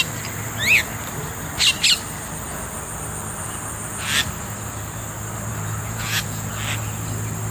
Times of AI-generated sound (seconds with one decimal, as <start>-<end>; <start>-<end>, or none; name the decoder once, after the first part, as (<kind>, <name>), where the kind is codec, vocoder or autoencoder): 5.5-6.5 (vocoder, Vocos)